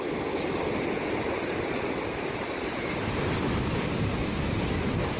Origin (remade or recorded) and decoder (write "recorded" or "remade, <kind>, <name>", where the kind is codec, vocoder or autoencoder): recorded